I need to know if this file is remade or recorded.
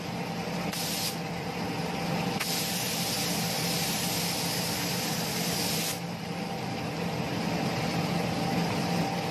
recorded